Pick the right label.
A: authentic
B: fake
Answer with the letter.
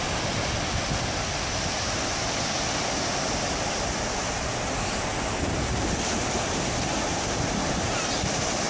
A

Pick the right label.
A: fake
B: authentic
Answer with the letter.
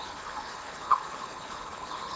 A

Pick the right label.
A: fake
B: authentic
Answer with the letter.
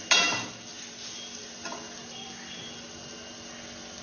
B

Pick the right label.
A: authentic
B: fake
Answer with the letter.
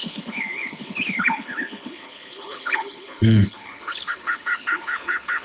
B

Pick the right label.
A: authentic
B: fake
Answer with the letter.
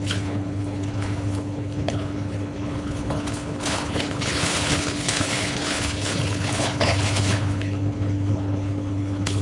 B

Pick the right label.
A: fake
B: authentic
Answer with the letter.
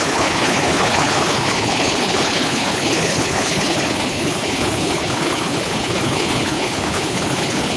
A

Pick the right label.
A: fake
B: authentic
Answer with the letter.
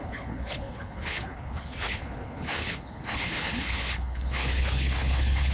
A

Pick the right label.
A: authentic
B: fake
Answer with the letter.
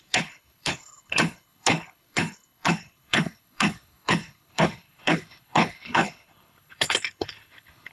B